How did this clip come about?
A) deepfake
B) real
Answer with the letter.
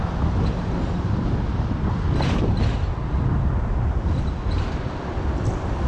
B